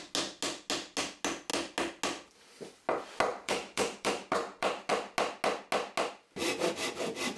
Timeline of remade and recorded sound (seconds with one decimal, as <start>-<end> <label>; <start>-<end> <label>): 0.0-3.3 recorded; 3.3-4.9 remade; 4.9-7.4 recorded

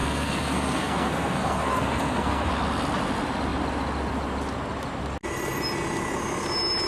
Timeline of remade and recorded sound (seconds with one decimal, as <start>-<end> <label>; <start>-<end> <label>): 0.0-2.5 remade; 2.5-6.9 recorded

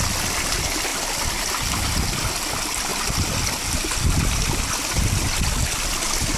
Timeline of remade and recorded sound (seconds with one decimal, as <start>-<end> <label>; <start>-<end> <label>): 0.0-6.4 recorded

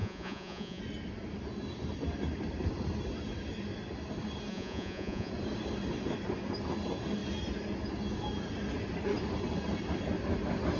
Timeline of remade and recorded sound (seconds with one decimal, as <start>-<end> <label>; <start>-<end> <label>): 0.0-0.8 remade; 0.8-4.5 recorded; 4.5-5.3 remade; 5.3-10.8 recorded

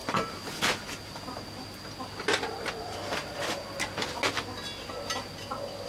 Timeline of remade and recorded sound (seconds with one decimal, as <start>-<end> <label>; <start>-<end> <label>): 0.0-0.7 remade; 0.7-5.9 recorded

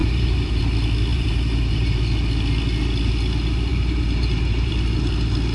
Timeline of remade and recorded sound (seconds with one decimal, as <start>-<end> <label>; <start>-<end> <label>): 0.0-0.6 remade; 0.6-1.1 recorded; 1.1-2.0 remade; 2.0-3.7 recorded; 3.7-4.7 remade; 4.7-5.5 recorded